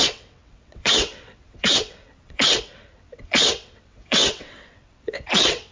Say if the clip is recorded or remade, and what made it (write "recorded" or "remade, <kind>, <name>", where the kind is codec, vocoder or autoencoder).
remade, vocoder, WaveNeXt